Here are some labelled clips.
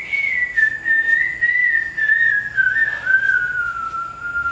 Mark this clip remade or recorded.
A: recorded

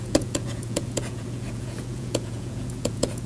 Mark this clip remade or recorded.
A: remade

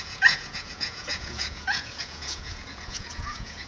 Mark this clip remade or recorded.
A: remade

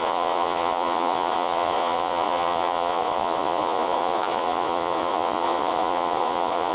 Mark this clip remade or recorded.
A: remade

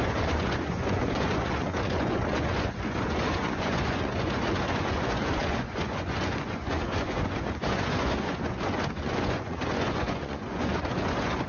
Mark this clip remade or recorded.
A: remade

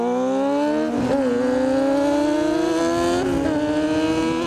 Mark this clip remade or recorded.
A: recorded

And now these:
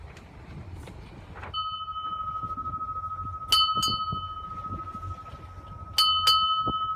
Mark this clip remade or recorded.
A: recorded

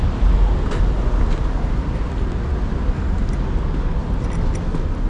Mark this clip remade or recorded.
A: recorded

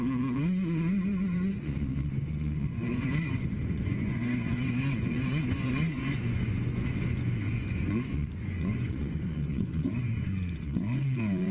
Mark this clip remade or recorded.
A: remade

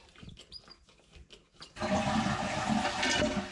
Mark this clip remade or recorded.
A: recorded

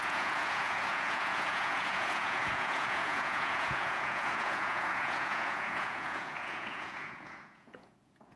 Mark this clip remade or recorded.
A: remade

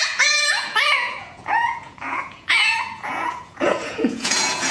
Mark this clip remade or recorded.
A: remade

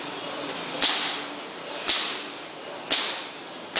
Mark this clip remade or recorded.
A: recorded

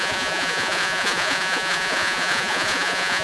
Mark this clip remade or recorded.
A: remade